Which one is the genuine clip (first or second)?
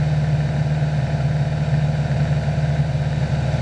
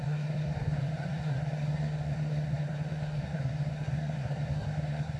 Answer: first